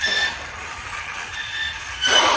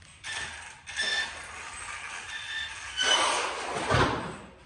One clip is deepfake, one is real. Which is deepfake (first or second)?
first